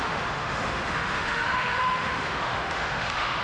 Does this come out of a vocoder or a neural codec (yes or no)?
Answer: yes